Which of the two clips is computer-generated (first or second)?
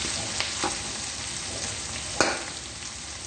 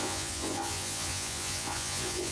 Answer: second